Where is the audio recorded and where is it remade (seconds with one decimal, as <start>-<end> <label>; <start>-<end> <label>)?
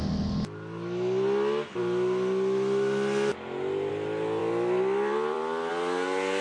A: 0.0-3.3 recorded; 3.3-3.9 remade; 3.9-4.4 recorded; 4.4-5.7 remade; 5.7-6.4 recorded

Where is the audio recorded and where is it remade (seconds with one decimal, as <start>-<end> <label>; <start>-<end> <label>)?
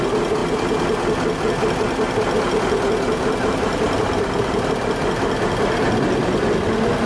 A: 0.0-7.1 recorded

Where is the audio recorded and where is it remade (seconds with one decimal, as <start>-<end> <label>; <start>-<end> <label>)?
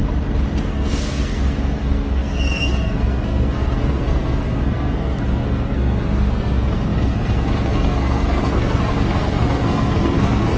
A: 0.0-0.6 recorded; 0.6-10.6 remade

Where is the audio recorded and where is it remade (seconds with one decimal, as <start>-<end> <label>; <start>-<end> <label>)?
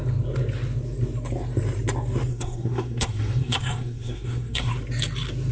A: 0.0-2.3 recorded; 2.3-4.7 remade; 4.7-5.5 recorded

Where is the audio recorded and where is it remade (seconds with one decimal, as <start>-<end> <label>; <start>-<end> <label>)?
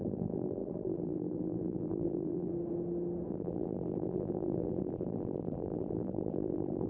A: 0.0-2.5 remade; 2.5-3.3 recorded; 3.3-6.9 remade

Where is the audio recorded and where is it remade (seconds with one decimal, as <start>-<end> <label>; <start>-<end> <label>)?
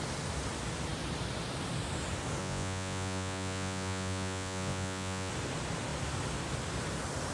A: 0.0-2.4 recorded; 2.4-5.3 remade; 5.3-7.3 recorded